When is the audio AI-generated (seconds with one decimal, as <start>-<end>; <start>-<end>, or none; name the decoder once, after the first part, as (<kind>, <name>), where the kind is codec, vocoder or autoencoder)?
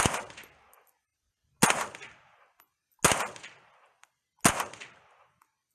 none